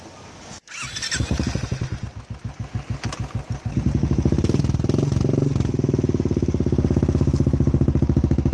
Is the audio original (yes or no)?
yes